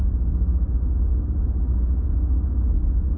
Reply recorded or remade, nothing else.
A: recorded